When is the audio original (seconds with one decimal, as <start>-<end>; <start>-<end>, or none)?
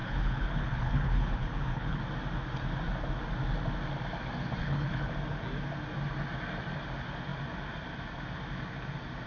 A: 2.0-4.6; 5.1-9.3